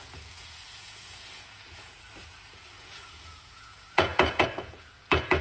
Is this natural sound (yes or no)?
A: no